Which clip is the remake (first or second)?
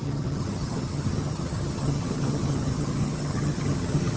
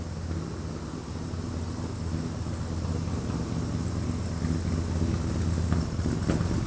first